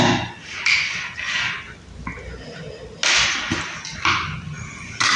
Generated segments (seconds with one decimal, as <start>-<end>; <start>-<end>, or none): none